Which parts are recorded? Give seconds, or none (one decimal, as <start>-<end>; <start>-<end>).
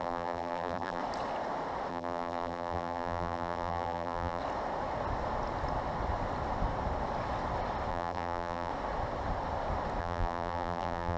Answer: 1.0-1.9; 4.4-7.9; 8.7-10.0